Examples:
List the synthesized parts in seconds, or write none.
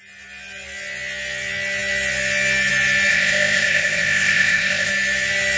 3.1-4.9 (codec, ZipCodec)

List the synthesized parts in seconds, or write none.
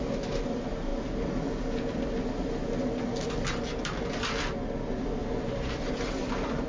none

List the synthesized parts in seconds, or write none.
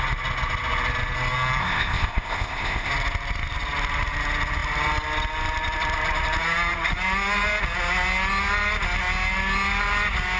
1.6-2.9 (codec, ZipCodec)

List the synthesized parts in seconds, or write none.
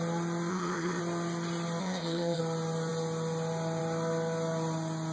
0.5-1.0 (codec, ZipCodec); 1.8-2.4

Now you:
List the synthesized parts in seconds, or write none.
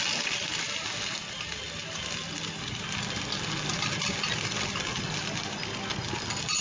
none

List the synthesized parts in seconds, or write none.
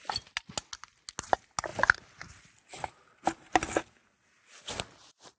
none